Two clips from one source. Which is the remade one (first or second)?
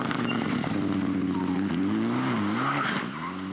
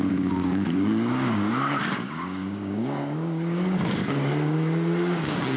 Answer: second